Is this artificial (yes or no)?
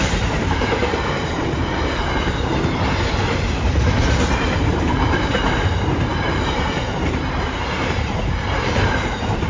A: yes